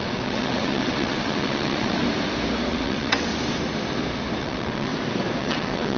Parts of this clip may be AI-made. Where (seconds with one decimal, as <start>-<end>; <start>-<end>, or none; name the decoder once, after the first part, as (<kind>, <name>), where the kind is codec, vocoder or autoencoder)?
0.0-2.0 (vocoder, WaveNeXt); 2.7-3.3; 4.4-4.9; 5.4-6.0